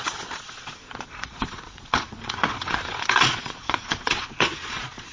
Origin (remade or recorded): remade